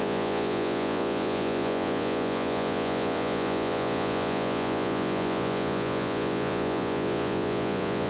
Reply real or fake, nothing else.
fake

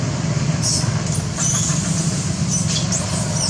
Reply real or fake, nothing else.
real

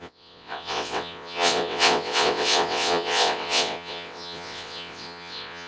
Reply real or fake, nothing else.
fake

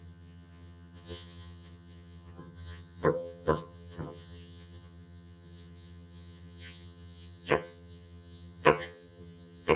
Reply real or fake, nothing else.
fake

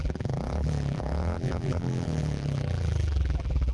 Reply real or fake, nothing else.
fake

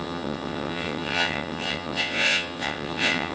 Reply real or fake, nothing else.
fake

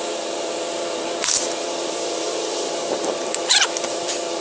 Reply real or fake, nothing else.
fake